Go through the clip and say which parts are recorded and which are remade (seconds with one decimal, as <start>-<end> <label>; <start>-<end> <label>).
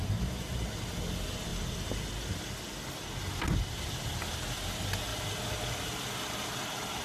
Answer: 0.0-7.0 recorded